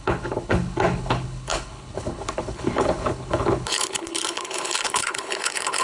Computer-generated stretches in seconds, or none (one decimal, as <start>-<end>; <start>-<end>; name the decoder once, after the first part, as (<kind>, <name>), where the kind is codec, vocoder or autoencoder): 0.0-5.8 (codec, HILCodec)